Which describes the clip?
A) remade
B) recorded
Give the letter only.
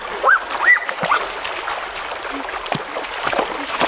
B